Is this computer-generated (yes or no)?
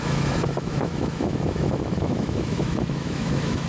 yes